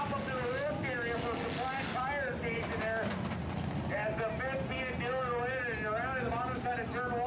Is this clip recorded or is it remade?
recorded